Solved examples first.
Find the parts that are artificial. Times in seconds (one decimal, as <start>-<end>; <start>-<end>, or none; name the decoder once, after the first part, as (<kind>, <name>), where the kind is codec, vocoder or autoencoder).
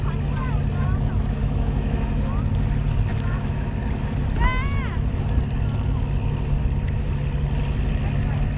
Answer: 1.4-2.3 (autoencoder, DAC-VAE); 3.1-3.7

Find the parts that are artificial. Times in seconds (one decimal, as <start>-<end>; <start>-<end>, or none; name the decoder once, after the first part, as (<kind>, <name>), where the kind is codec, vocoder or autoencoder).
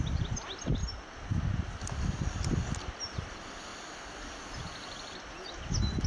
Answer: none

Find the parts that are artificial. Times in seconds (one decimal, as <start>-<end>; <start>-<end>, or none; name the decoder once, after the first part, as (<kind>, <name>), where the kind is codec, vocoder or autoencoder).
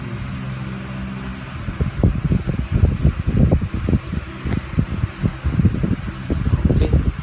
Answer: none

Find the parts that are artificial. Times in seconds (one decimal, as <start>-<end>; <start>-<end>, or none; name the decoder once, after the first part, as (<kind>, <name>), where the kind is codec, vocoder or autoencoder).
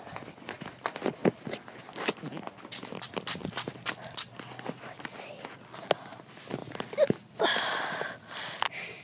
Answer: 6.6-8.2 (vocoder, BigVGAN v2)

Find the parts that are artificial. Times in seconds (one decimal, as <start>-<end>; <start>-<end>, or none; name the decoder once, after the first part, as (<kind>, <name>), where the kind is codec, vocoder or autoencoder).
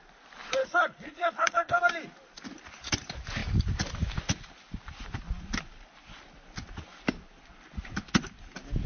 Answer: 0.6-1.8 (codec, HILCodec)